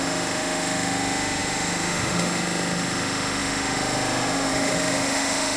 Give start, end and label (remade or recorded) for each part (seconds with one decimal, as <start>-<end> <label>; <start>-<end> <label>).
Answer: 0.0-5.6 remade